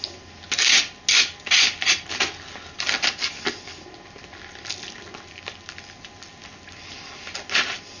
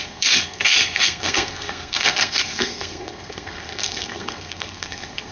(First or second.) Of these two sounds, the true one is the first